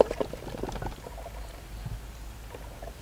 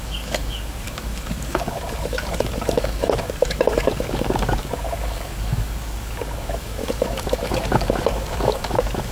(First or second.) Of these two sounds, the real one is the first